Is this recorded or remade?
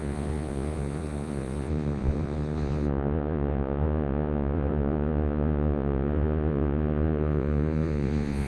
remade